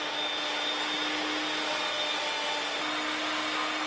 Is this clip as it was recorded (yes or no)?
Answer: yes